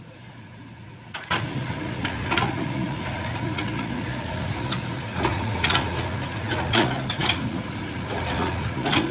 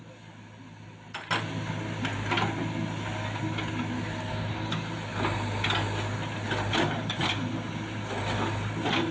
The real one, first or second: second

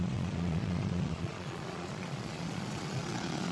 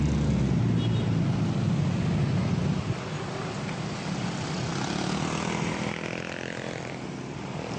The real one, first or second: second